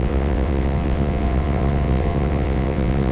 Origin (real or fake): fake